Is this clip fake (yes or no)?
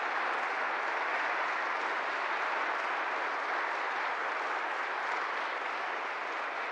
no